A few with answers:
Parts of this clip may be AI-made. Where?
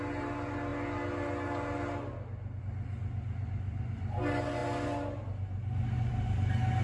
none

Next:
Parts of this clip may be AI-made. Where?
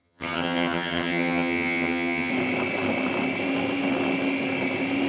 0.0-2.3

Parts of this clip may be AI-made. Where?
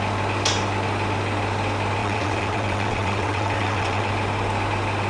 2.0-4.1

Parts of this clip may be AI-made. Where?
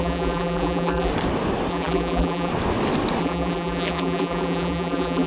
0.0-1.1; 1.7-2.5; 3.2-5.3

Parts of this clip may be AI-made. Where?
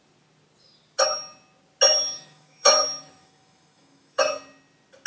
1.9-4.2